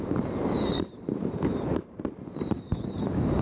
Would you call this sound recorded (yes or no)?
no